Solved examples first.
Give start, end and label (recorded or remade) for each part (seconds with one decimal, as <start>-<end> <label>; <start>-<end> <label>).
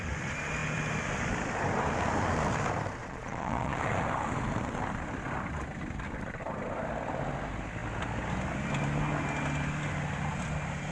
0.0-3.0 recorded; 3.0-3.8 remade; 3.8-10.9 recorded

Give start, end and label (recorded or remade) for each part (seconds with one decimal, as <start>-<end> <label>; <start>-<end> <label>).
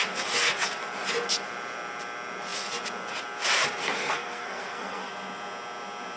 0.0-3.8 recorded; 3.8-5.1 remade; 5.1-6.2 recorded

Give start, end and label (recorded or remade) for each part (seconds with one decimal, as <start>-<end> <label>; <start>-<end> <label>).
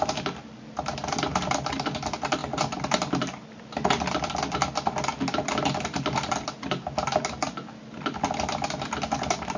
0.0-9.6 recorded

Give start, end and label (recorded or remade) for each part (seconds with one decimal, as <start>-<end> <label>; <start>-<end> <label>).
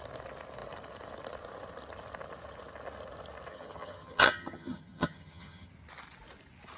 0.0-3.5 recorded; 3.5-5.7 remade; 5.7-6.8 recorded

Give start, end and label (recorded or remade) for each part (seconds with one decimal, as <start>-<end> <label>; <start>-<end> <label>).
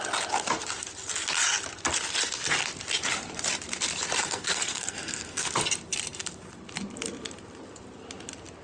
0.0-4.2 recorded; 4.2-5.5 remade; 5.5-8.6 recorded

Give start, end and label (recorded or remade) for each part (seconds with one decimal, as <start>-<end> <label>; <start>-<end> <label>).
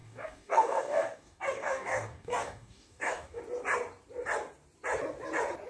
0.0-3.4 remade; 3.4-5.7 recorded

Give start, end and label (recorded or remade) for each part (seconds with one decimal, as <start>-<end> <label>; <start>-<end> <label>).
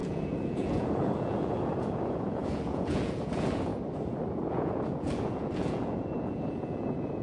0.0-3.7 remade; 3.7-4.5 recorded; 4.5-7.2 remade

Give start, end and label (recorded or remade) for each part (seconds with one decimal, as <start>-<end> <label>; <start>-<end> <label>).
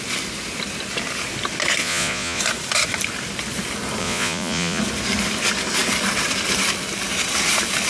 0.0-1.8 recorded; 1.8-2.4 remade; 2.4-4.0 recorded; 4.0-4.8 remade; 4.8-7.9 recorded